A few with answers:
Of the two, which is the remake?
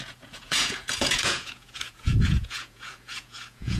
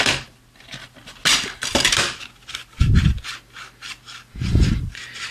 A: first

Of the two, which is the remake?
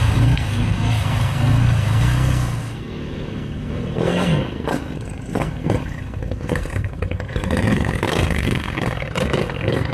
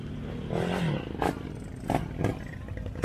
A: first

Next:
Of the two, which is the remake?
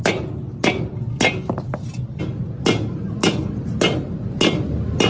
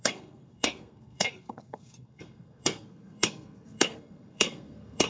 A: second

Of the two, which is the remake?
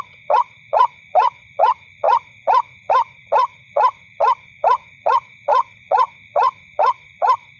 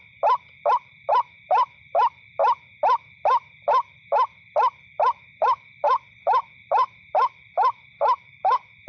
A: first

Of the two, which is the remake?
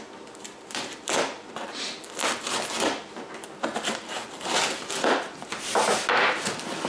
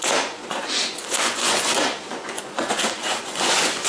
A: second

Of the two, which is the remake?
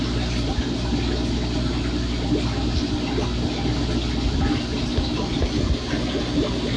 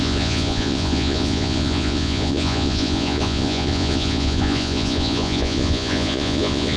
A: second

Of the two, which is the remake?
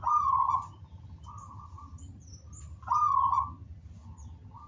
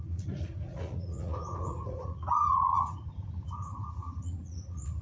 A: second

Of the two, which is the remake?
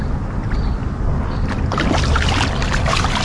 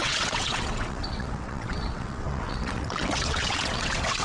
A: second